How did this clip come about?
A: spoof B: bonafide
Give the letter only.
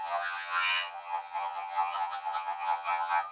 A